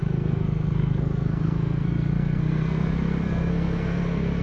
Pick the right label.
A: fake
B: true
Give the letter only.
A